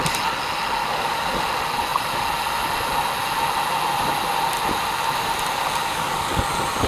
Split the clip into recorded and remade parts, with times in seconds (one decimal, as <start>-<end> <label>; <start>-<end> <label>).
0.0-0.8 recorded; 0.8-1.4 remade; 1.4-5.8 recorded; 5.8-6.4 remade; 6.4-6.9 recorded